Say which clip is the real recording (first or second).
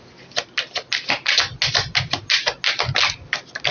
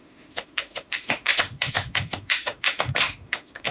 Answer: first